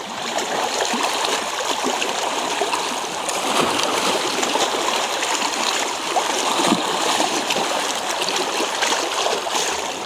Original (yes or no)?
no